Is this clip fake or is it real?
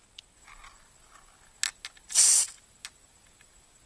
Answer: real